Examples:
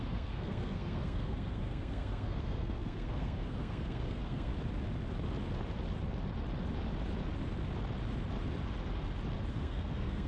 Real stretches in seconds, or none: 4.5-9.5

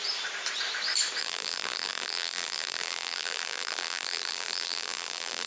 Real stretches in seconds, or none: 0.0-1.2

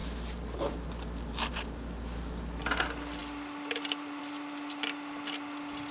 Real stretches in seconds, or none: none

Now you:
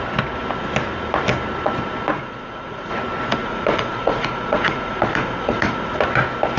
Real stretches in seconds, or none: 0.0-2.1; 2.9-3.4; 6.0-6.6

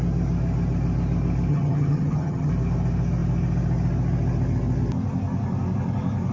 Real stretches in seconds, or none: 0.0-1.5; 2.5-6.3

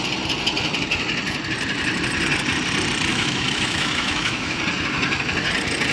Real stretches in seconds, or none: 0.0-3.1; 4.6-5.9

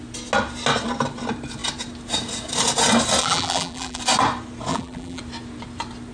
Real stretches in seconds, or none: 0.0-3.2; 4.0-4.7; 5.2-6.1